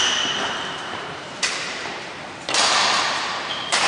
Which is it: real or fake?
fake